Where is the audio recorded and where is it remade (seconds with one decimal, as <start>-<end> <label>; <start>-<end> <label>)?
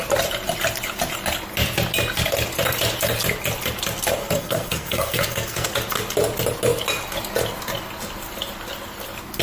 0.0-4.2 recorded; 4.2-5.7 remade; 5.7-9.4 recorded